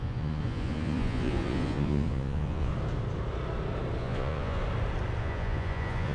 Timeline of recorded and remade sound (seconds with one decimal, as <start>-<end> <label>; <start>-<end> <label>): 0.0-2.7 remade; 2.7-4.0 recorded; 4.0-4.6 remade; 4.6-5.2 recorded; 5.2-6.1 remade